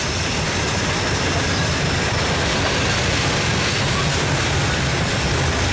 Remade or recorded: recorded